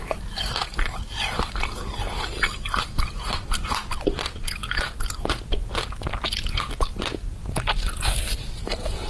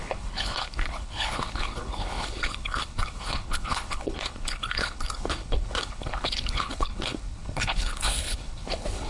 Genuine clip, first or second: first